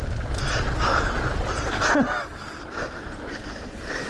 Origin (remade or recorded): recorded